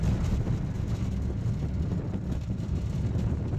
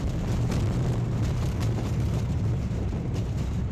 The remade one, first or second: second